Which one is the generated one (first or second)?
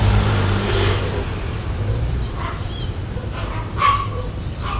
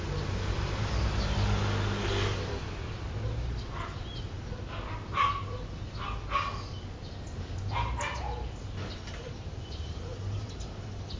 first